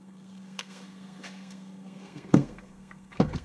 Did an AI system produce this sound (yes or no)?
yes